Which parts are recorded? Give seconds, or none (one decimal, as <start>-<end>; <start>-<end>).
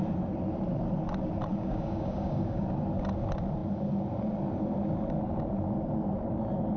0.0-1.5; 2.6-6.8